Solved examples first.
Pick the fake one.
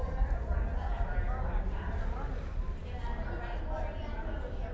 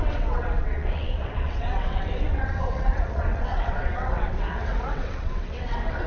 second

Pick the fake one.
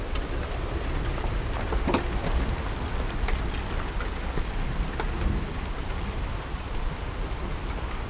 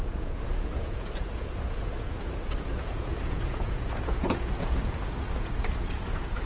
second